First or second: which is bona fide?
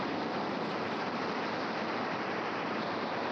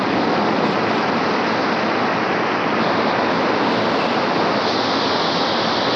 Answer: second